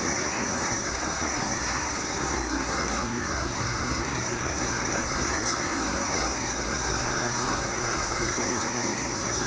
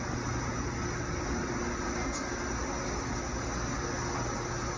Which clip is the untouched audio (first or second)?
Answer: second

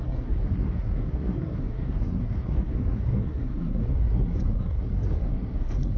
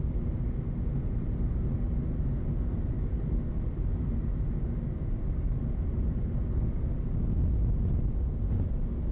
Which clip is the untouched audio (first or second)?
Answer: second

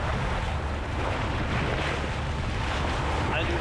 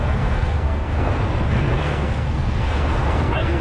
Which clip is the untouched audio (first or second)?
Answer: first